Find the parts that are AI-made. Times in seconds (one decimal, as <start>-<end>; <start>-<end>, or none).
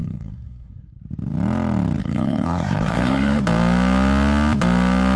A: 0.0-1.0; 2.0-3.4